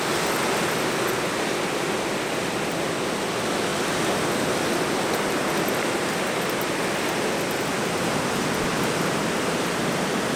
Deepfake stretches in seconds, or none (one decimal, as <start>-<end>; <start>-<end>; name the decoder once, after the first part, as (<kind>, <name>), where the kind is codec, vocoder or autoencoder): none